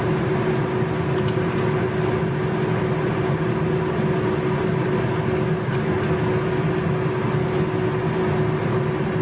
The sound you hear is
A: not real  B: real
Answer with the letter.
B